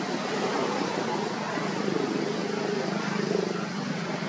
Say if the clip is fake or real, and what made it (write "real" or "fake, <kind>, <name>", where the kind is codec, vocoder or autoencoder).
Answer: real